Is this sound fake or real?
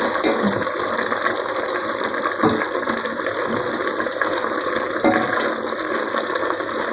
real